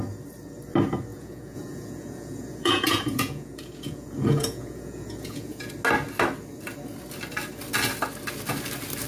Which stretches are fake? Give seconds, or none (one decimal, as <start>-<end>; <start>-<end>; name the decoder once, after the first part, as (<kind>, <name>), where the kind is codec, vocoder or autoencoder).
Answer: 1.1-5.7 (vocoder, Vocos)